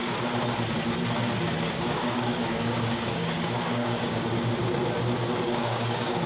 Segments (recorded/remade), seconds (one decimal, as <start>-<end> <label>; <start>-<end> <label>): 0.0-1.7 recorded; 1.7-4.6 remade; 4.6-5.4 recorded; 5.4-6.3 remade